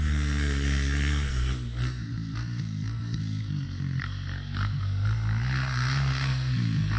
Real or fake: fake